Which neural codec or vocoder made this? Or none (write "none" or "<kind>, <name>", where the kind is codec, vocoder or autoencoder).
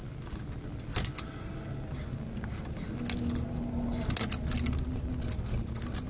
none